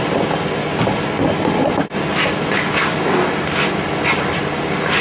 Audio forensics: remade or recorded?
recorded